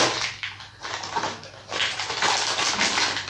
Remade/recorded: recorded